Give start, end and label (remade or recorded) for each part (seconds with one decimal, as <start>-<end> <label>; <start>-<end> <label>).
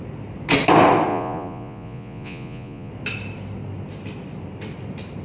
0.0-1.1 recorded; 1.1-2.9 remade; 2.9-5.2 recorded